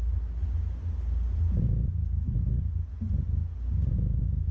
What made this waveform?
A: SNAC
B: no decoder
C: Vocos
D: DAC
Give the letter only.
B